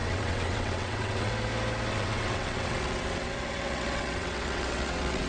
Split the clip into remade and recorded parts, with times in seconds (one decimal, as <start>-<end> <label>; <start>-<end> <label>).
0.0-1.3 remade; 1.3-1.9 recorded; 1.9-5.3 remade